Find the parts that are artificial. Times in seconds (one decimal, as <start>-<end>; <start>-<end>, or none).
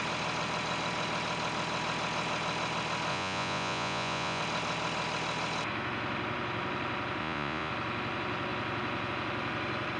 3.1-4.4; 7.2-7.7